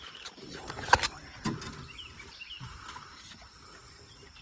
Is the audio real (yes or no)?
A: no